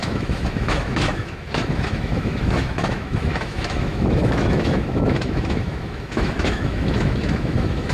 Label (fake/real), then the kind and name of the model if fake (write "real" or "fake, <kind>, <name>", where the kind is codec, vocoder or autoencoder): fake, autoencoder, DAC-VAE